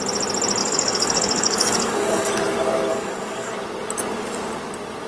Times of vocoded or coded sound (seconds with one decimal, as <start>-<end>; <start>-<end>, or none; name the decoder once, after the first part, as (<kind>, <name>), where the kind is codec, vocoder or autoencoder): 0.6-2.3 (codec, DAC); 2.9-3.5